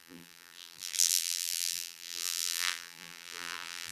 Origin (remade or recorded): remade